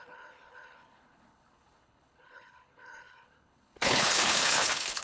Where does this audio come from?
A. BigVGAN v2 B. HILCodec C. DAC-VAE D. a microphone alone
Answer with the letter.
B